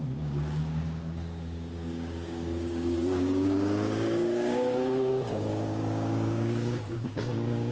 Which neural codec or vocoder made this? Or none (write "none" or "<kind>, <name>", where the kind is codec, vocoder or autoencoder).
codec, DAC